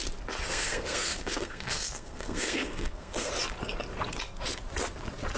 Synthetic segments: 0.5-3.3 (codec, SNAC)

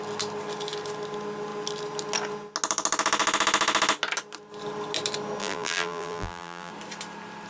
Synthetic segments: 5.4-6.7 (vocoder, BigVGAN v2)

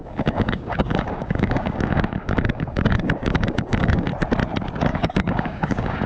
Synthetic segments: 0.0-4.1 (codec, DAC); 4.9-6.1

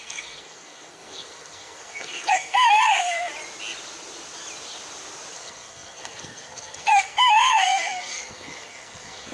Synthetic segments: 0.0-3.3 (codec, SNAC); 5.3-9.3

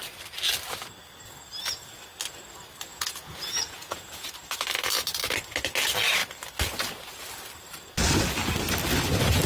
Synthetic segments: 2.9-4.3 (vocoder, Vocos)

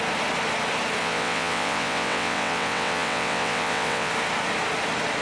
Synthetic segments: 1.0-4.1 (vocoder, WaveNeXt)

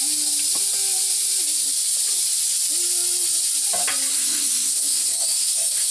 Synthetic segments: 4.1-5.9 (codec, SNAC)